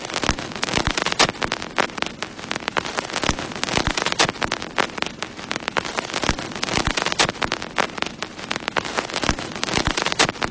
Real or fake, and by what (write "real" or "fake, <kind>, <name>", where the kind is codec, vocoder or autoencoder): real